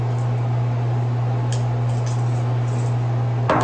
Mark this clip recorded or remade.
recorded